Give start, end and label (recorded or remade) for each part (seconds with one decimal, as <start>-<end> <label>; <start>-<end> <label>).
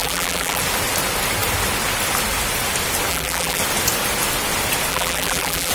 0.0-0.6 remade; 0.6-3.1 recorded; 3.1-3.6 remade; 3.6-4.9 recorded; 4.9-5.7 remade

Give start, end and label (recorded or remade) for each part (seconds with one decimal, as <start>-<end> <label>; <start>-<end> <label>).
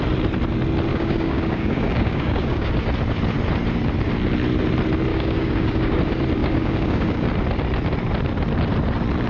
0.0-0.9 recorded; 0.9-2.7 remade; 2.7-5.1 recorded; 5.1-6.0 remade; 6.0-6.4 recorded; 6.4-7.3 remade; 7.3-9.3 recorded